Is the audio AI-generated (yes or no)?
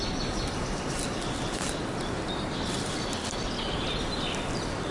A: no